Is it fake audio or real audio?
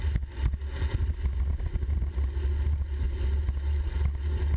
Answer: real